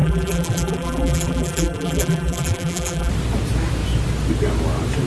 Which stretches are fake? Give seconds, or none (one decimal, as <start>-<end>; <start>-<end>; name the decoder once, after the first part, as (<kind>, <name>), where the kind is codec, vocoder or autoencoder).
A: 0.0-3.1 (vocoder, BigVGAN v2)